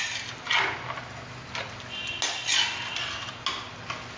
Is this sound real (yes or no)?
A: yes